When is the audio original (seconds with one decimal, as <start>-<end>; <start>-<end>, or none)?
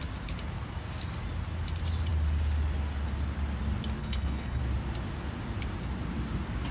0.0-4.0; 4.6-6.7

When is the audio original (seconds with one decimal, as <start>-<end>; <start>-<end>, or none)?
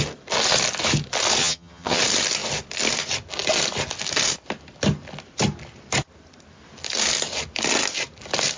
0.0-1.4; 2.0-8.6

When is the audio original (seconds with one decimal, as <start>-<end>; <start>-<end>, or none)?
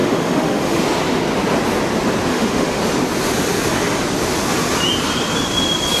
0.8-2.3; 2.8-6.0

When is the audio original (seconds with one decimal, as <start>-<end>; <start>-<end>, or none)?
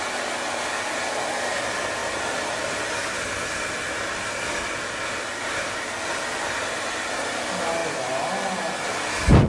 0.0-9.5